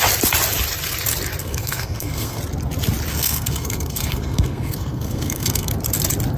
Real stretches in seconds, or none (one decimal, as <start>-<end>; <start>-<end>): 0.0-1.4; 2.4-3.1; 5.7-6.4